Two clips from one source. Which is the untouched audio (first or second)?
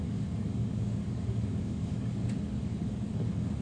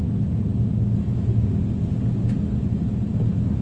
second